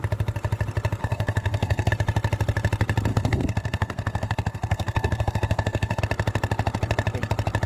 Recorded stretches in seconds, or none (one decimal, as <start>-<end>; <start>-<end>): 0.0-1.0; 1.9-3.1; 6.0-7.7